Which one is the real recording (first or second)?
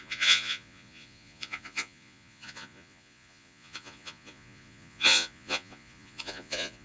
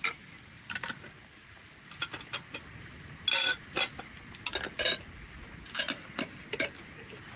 second